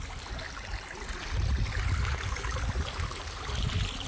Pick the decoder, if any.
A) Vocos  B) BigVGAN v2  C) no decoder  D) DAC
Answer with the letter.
C